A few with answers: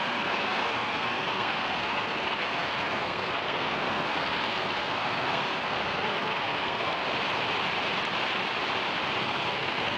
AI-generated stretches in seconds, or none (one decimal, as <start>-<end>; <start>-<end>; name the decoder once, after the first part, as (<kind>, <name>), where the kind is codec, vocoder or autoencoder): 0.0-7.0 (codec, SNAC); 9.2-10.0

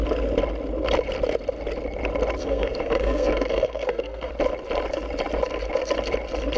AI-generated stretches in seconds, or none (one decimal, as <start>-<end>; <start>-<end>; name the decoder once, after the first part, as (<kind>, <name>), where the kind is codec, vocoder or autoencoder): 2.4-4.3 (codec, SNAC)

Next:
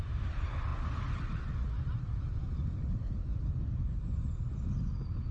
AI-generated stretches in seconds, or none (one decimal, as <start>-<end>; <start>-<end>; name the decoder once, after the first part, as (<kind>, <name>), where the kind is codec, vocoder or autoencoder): none

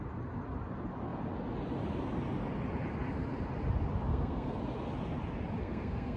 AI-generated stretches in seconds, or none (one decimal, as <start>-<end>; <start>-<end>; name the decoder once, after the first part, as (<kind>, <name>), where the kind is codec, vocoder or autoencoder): 4.1-4.6 (codec, SNAC); 5.6-6.2

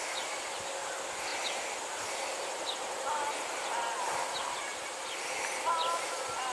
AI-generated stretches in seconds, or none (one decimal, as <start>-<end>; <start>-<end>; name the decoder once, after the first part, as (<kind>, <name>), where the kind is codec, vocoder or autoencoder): none

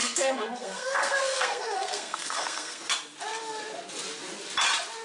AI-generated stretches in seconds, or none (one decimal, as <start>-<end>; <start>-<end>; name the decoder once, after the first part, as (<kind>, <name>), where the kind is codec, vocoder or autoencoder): 0.0-2.8 (codec, SNAC)

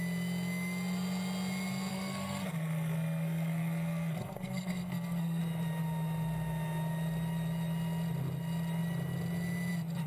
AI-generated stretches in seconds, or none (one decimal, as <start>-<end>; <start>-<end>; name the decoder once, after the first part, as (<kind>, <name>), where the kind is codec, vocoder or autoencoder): 1.9-5.4 (codec, SNAC)

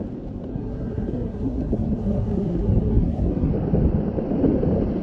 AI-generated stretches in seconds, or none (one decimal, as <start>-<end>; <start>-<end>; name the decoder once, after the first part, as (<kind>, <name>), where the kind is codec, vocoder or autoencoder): 0.5-3.5 (codec, SNAC)